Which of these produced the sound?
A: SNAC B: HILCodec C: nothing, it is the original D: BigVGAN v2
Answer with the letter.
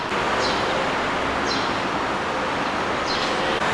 C